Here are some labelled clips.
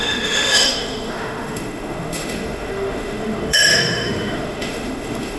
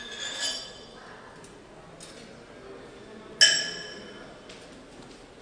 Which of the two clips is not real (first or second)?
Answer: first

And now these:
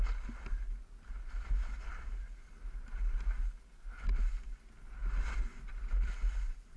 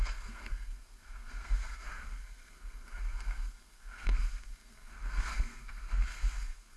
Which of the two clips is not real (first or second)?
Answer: second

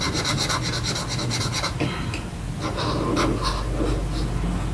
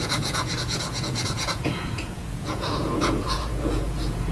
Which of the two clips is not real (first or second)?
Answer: second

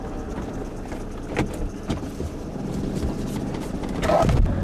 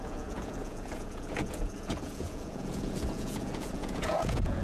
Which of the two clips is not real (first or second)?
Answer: second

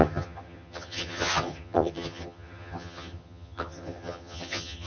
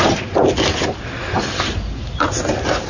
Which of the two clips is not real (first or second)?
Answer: first